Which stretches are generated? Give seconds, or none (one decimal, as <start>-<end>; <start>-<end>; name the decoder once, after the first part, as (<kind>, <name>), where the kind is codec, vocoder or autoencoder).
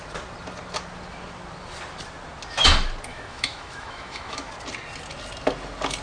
3.1-4.5 (autoencoder, DAC-VAE)